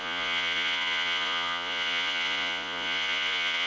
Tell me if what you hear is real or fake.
fake